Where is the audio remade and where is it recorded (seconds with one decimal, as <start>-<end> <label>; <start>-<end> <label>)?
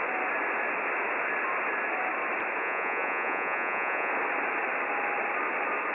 0.0-2.6 recorded; 2.6-4.1 remade; 4.1-5.9 recorded